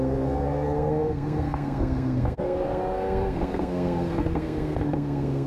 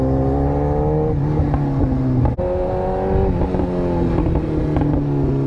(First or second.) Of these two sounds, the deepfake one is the first